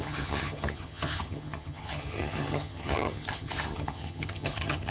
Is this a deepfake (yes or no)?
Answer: yes